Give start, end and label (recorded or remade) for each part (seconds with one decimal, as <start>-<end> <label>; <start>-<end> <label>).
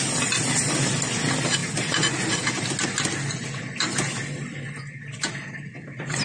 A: 0.0-5.7 recorded; 5.7-6.2 remade